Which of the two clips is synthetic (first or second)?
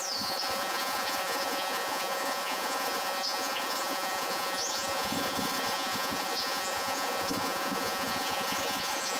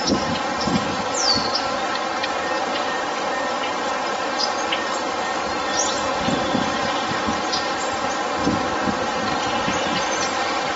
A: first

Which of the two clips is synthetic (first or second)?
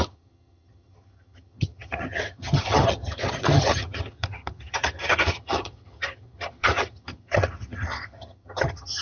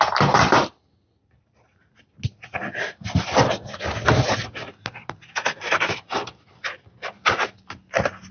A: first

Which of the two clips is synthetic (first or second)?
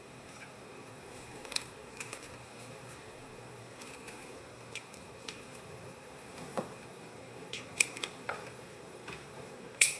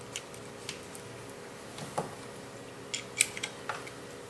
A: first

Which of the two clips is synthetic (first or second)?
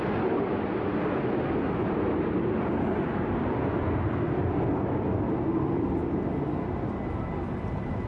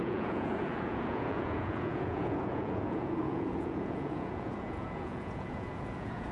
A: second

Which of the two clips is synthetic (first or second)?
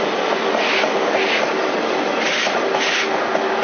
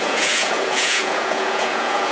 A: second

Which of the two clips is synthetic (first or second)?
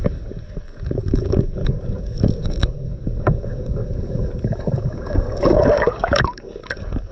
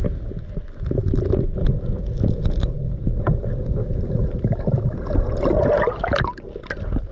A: first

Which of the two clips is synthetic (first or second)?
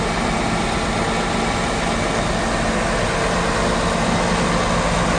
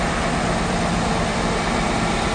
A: second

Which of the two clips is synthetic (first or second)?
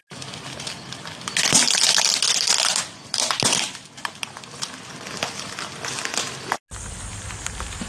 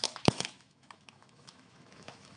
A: second